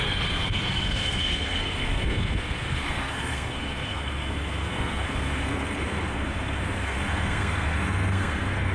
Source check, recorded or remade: remade